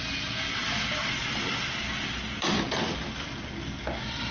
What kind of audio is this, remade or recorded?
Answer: recorded